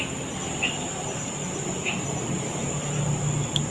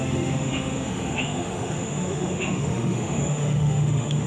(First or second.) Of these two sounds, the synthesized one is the second